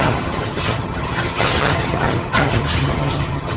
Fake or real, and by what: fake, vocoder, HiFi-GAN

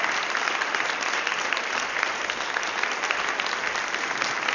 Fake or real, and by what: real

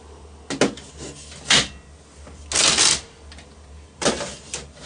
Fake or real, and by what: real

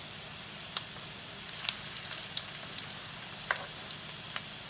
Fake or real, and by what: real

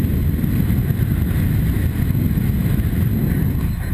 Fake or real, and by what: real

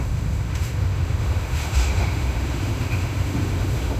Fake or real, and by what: fake, autoencoder, DAC-VAE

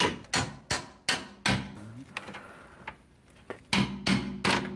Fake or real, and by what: real